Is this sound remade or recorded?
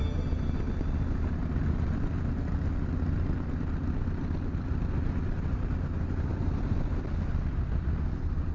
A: recorded